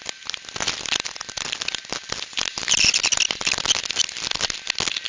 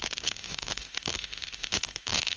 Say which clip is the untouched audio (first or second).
first